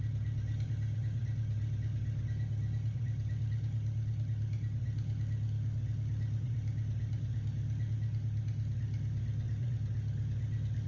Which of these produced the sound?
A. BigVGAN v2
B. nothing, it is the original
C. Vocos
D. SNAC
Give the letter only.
B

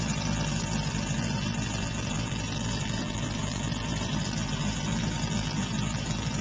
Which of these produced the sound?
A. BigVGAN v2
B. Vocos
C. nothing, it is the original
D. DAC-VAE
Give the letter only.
A